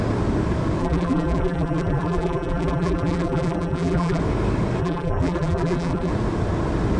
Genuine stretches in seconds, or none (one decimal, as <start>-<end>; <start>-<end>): 0.0-0.8; 4.2-4.8; 6.1-7.0